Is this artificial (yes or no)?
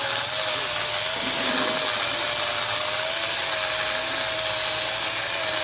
no